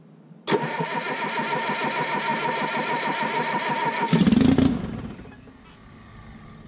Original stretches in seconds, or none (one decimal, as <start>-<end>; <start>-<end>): 0.0-6.7